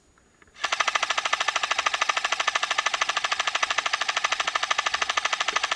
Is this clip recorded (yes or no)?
yes